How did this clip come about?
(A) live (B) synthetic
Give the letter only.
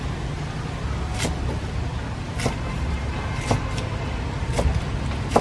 B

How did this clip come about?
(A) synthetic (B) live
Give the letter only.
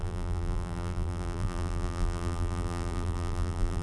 A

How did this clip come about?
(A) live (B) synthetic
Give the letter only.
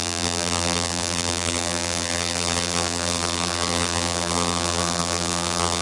B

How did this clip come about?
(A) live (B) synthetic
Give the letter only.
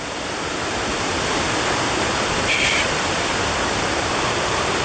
B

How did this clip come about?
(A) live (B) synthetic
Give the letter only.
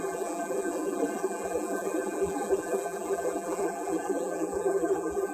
B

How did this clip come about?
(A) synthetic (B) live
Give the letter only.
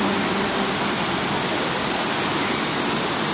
B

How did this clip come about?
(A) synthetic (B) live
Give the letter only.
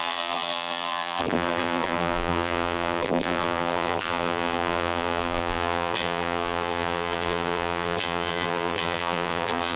A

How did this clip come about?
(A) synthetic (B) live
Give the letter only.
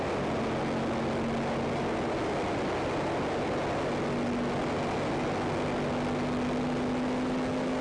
B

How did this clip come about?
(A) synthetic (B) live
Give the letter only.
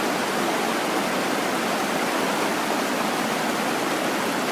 B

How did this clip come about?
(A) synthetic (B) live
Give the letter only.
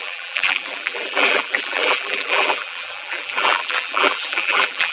A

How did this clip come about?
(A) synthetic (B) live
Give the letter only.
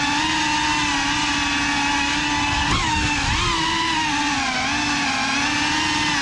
B